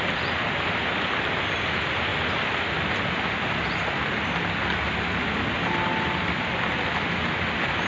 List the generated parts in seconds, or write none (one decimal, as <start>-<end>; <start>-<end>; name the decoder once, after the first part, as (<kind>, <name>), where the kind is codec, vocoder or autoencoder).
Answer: none